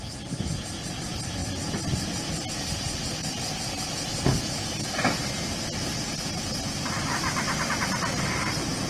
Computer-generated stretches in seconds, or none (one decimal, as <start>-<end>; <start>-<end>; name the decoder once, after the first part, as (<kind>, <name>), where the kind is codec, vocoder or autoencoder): none